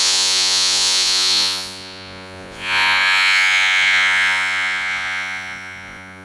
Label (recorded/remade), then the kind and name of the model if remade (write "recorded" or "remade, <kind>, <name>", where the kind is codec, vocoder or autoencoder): remade, vocoder, Vocos